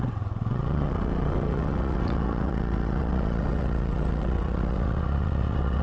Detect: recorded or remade remade